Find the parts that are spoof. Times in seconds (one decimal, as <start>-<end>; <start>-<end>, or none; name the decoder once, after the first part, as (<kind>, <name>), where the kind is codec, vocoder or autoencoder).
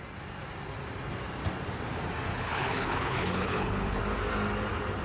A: 2.3-4.0 (codec, HILCodec)